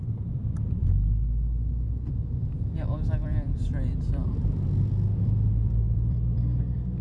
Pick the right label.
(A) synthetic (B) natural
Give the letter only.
A